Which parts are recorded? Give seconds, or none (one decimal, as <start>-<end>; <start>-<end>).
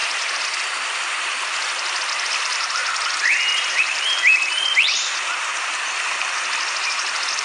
0.0-2.4; 2.8-3.5; 5.5-6.9